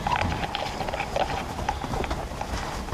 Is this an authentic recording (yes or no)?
yes